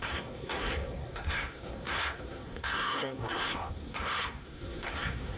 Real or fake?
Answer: fake